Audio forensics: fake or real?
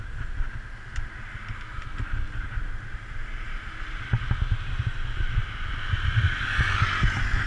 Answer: real